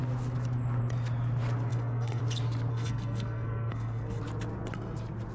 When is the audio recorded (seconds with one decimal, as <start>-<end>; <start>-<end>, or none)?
0.0-1.7; 2.2-2.7; 4.2-5.3